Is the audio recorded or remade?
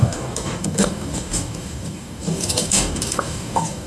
remade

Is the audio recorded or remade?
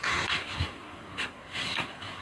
remade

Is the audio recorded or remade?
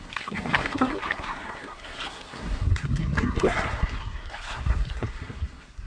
remade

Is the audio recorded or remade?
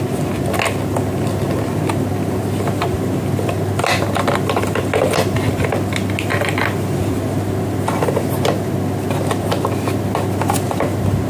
recorded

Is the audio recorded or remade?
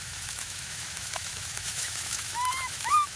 remade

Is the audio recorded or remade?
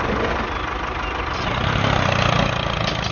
recorded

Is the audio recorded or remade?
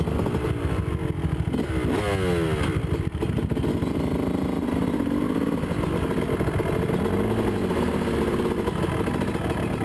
recorded